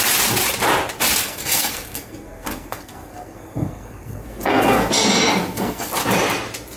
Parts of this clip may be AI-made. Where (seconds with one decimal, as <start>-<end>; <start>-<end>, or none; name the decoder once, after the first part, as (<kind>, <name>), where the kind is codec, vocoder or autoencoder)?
1.2-4.9 (codec, SNAC); 5.4-5.9